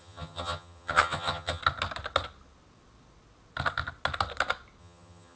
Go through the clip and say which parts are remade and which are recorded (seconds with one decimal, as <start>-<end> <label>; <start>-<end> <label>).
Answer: 0.0-1.6 remade; 1.6-4.8 recorded; 4.8-5.4 remade